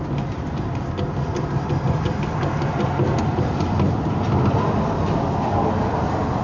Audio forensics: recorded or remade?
recorded